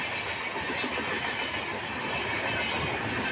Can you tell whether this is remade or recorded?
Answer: recorded